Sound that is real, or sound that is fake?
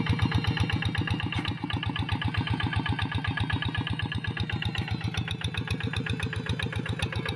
real